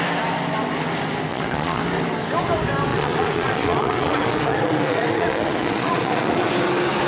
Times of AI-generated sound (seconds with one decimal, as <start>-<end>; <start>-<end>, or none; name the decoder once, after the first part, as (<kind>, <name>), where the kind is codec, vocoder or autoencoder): 1.3-1.8 (vocoder, Vocos); 2.9-6.5